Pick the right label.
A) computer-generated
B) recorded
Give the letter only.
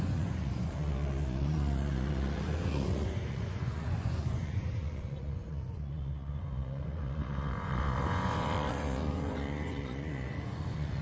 A